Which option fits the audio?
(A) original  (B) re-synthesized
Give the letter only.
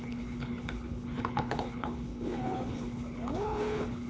B